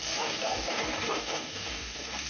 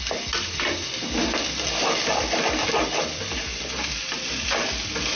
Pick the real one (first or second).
second